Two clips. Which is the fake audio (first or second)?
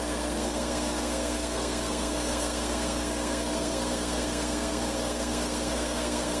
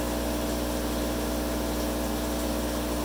first